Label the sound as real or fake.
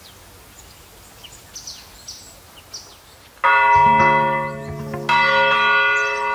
real